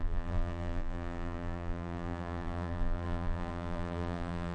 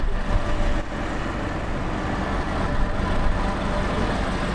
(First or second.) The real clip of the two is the second